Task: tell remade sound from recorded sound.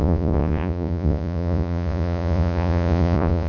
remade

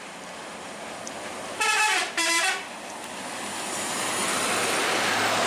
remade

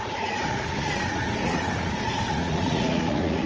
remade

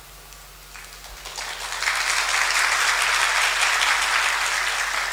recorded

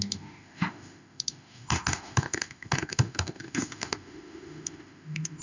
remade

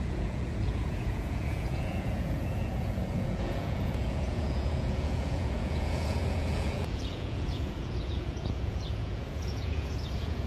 remade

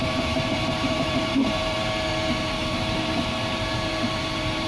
remade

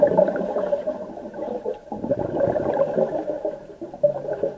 remade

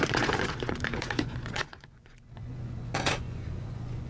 remade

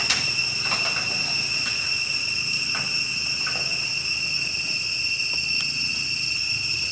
recorded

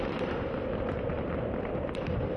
remade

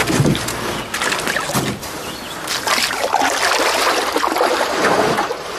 recorded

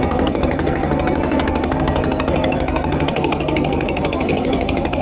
remade